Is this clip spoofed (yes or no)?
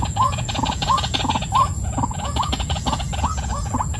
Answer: yes